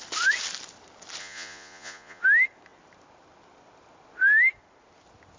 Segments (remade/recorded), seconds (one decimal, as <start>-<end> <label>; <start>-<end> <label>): 0.0-1.2 recorded; 1.2-2.2 remade; 2.2-5.4 recorded